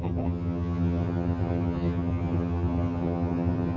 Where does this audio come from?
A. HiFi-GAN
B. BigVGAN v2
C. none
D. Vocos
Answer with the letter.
A